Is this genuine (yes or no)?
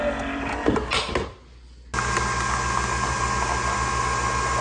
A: yes